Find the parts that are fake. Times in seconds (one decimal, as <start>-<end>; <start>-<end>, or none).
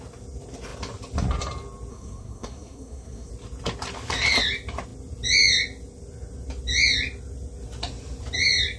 1.9-3.3